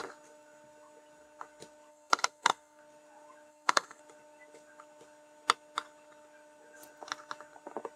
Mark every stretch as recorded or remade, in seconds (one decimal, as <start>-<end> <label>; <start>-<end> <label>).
0.0-1.9 recorded; 1.9-2.8 remade; 2.8-3.5 recorded; 3.5-4.0 remade; 4.0-8.0 recorded